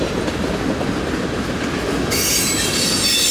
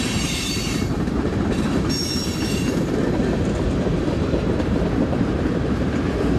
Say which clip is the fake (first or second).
second